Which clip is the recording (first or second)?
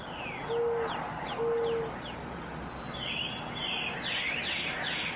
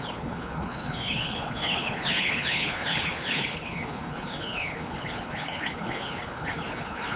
first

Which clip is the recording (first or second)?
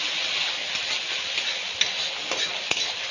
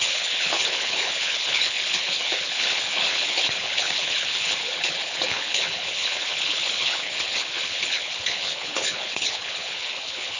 first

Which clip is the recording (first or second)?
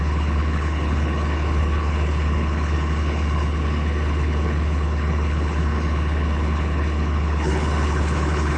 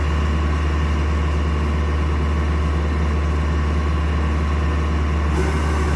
second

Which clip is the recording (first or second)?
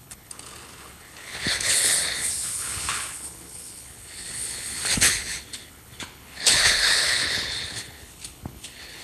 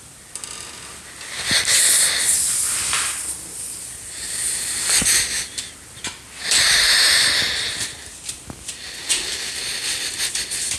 second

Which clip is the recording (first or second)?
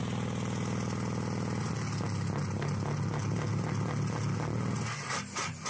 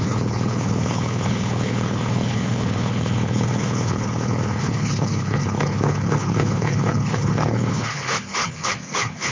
first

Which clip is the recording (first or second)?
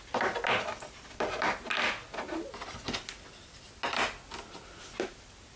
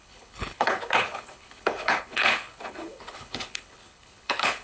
first